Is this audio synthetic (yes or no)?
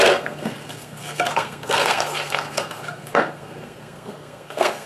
yes